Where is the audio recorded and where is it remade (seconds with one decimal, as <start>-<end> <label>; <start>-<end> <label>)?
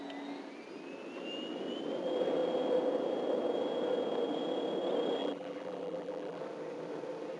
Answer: 0.0-5.2 recorded; 5.2-6.4 remade; 6.4-7.4 recorded